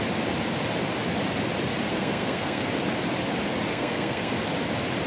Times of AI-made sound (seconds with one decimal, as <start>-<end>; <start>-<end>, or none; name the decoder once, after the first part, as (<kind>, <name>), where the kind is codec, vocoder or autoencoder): 1.9-2.7 (codec, SNAC); 3.7-4.3